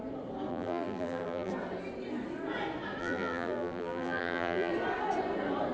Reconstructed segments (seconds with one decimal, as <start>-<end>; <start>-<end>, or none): 0.5-1.5; 3.0-4.7